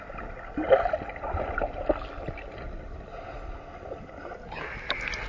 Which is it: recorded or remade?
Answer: recorded